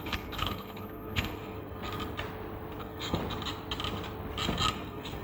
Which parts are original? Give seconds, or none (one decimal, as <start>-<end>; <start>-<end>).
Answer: 1.8-2.8; 3.2-4.7